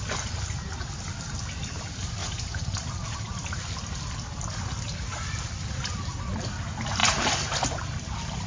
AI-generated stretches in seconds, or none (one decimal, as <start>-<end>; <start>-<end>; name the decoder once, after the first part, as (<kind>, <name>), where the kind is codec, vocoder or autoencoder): 2.2-2.8 (vocoder, Vocos)